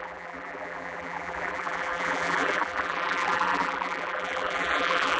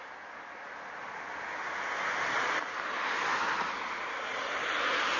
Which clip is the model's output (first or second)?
first